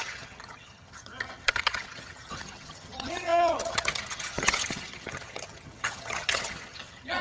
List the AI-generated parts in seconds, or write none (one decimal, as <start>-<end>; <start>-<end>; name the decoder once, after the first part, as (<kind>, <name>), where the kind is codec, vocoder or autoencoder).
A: 0.0-7.2 (vocoder, HiFi-GAN)